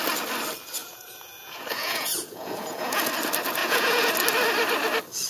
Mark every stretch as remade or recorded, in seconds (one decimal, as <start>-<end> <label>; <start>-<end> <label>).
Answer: 0.0-0.8 recorded; 0.8-3.1 remade; 3.1-3.6 recorded; 3.6-4.1 remade; 4.1-5.3 recorded